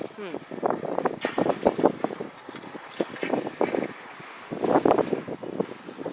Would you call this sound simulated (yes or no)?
no